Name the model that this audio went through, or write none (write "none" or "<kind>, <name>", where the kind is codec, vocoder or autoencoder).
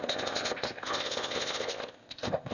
codec, ZipCodec